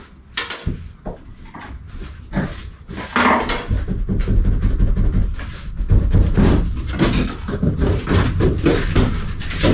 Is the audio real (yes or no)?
yes